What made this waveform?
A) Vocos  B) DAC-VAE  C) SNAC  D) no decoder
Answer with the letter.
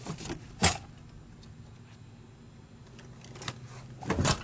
D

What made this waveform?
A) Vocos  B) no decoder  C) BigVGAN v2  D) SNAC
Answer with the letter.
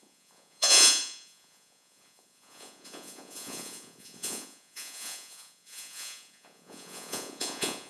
A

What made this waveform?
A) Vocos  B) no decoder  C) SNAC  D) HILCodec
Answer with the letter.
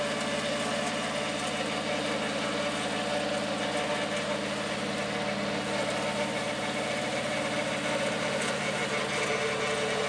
B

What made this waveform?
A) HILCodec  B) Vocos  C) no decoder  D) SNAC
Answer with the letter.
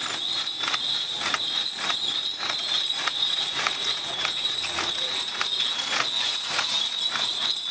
B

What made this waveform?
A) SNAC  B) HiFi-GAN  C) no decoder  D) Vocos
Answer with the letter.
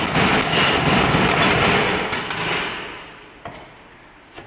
C